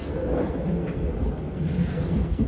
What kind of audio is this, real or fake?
fake